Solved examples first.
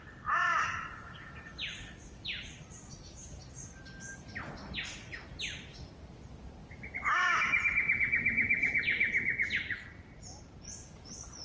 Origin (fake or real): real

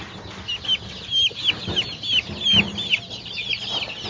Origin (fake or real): real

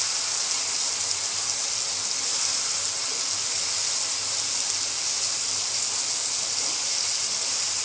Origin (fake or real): real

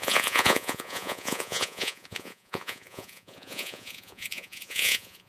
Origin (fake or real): fake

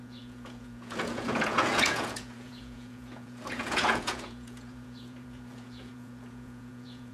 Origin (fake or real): fake